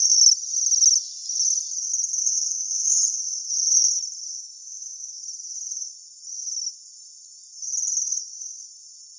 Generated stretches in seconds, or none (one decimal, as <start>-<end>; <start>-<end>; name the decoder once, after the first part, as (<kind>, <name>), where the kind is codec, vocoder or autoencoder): 2.2-3.2 (codec, DAC); 4.3-5.2